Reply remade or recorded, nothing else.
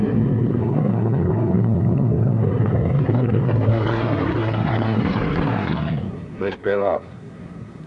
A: remade